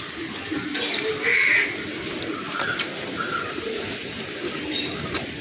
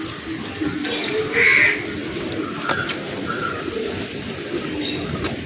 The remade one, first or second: first